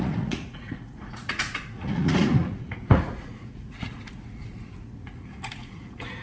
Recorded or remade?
remade